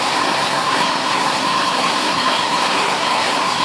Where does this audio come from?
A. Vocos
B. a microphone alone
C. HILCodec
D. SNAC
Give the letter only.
D